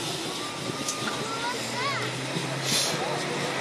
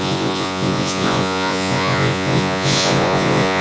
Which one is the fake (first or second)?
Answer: second